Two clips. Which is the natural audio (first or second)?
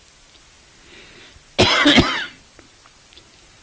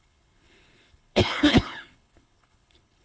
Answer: first